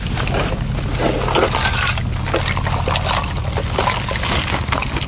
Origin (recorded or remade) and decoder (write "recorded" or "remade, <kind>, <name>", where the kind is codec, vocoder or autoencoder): recorded